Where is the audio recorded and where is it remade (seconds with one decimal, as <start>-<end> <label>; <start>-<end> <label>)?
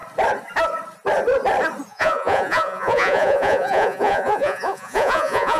0.0-1.9 recorded; 1.9-5.6 remade